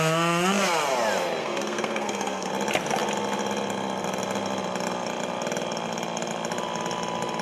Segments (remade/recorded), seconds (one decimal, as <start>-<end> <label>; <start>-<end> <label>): 0.0-1.4 recorded; 1.4-2.5 remade; 2.5-7.4 recorded